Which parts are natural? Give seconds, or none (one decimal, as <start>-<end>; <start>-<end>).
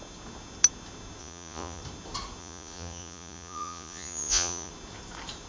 0.0-1.2; 1.8-2.4; 4.7-5.5